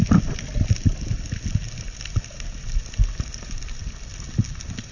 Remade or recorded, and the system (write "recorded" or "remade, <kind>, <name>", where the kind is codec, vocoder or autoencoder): recorded